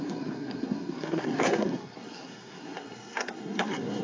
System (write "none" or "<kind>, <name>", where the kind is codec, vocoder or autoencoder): codec, SNAC